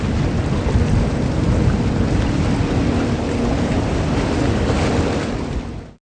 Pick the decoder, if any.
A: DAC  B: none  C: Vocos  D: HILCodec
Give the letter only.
B